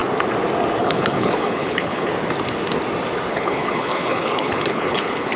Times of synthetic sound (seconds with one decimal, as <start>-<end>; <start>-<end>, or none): 0.8-2.1; 3.3-5.4

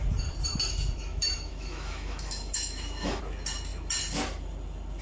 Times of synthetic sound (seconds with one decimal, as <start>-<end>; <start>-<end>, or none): 0.7-3.2